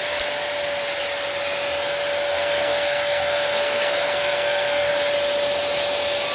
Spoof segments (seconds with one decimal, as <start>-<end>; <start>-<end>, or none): 2.3-4.9